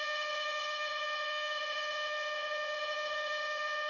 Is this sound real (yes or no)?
no